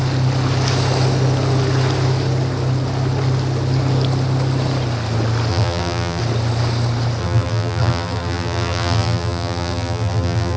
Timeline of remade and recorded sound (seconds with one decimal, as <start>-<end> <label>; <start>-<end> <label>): 0.0-5.5 recorded; 5.5-6.2 remade; 6.2-7.2 recorded; 7.2-10.6 remade